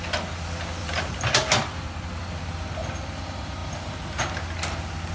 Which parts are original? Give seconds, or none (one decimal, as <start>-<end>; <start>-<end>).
0.0-0.8; 1.9-5.1